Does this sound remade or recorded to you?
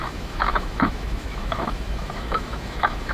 remade